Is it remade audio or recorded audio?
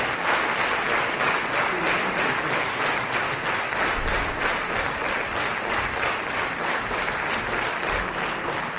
recorded